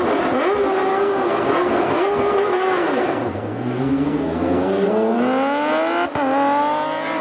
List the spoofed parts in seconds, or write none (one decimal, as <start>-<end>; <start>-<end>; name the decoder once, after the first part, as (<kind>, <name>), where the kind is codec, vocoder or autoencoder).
0.9-5.2 (codec, SNAC)